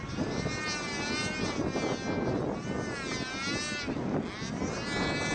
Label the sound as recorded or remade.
recorded